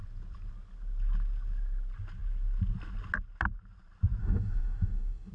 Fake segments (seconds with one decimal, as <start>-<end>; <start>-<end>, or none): 4.2-5.3